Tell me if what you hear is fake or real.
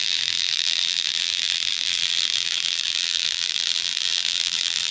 fake